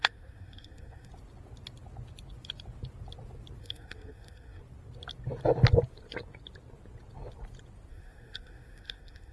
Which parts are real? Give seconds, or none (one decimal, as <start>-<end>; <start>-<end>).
1.1-3.6; 4.6-7.9